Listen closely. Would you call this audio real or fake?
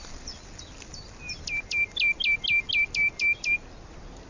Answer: real